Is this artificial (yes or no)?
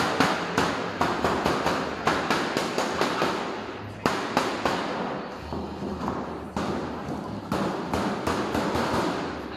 no